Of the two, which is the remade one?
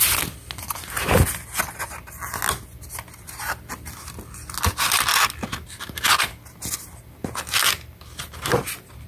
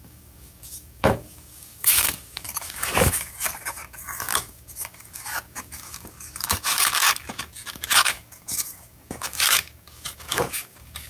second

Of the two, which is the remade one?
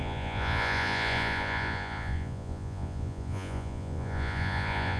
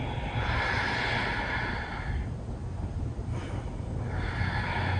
first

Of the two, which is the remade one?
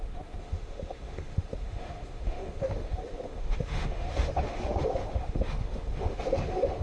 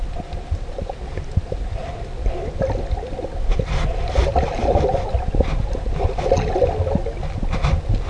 first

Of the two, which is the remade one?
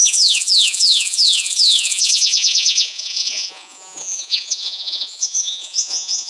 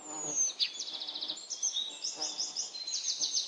first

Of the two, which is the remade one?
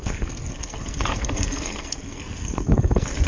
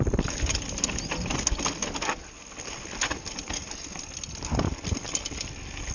first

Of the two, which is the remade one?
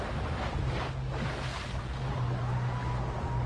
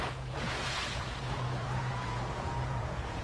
second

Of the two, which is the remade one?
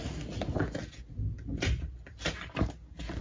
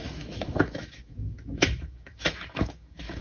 second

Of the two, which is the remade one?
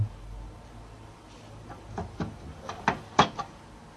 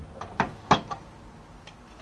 first